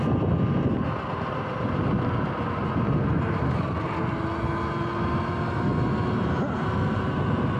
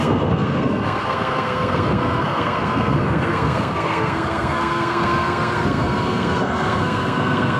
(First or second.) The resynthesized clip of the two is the second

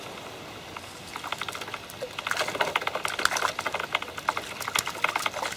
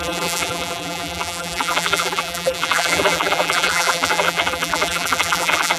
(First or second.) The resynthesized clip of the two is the second